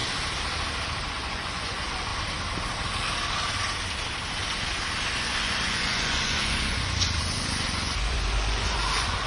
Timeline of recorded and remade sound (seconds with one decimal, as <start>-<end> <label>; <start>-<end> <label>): 0.0-1.1 recorded; 1.1-2.1 remade; 2.1-5.2 recorded; 5.2-9.3 remade